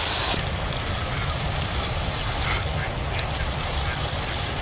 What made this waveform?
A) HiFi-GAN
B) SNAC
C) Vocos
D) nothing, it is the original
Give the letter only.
D